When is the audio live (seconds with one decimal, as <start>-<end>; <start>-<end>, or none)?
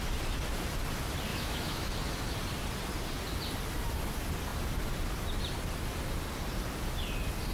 0.0-1.3; 1.9-7.5